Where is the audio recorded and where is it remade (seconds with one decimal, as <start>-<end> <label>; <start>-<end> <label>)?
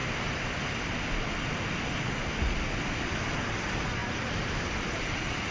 0.0-3.3 recorded; 3.3-5.5 remade